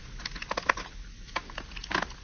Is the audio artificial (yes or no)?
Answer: no